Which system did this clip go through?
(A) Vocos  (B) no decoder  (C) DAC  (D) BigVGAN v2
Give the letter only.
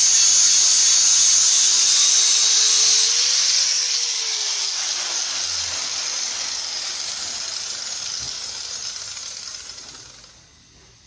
B